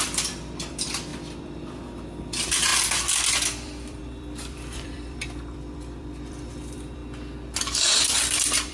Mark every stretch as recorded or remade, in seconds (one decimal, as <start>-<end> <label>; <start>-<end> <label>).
0.0-7.0 remade; 7.0-7.6 recorded; 7.6-8.7 remade